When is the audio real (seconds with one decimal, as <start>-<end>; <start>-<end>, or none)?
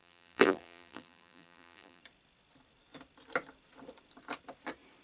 2.0-5.0